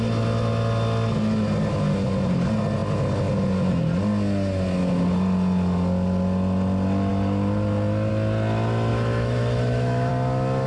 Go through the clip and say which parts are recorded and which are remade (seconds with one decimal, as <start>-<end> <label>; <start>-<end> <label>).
0.0-8.9 recorded; 8.9-10.1 remade; 10.1-10.7 recorded